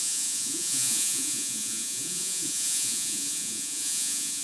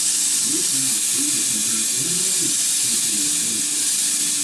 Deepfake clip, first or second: first